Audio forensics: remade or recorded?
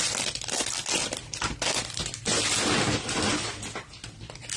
recorded